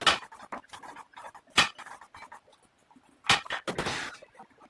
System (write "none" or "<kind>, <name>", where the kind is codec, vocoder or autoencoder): none